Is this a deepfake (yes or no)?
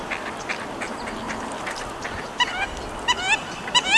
no